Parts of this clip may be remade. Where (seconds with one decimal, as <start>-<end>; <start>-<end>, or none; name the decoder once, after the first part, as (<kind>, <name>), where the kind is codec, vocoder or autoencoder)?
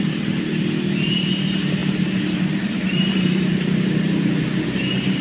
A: 0.0-3.5 (vocoder, BigVGAN v2)